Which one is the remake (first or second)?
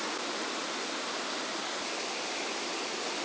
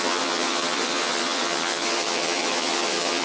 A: second